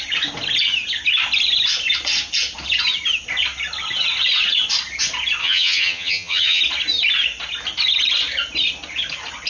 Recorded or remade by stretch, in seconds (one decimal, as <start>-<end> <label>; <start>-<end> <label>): 0.0-5.4 recorded; 5.4-6.6 remade; 6.6-9.5 recorded